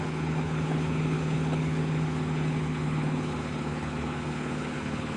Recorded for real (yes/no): no